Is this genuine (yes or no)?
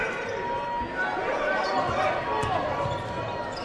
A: yes